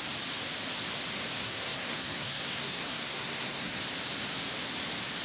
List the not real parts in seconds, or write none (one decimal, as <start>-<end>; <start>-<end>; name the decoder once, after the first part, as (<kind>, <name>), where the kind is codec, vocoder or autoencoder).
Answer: 1.4-3.8 (codec, SNAC)